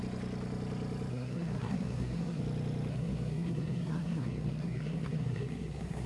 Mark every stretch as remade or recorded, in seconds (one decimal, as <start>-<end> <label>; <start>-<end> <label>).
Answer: 0.0-1.1 recorded; 1.1-2.4 remade; 2.4-2.9 recorded; 2.9-6.1 remade